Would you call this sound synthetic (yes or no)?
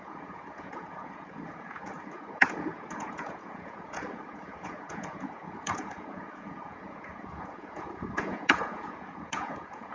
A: yes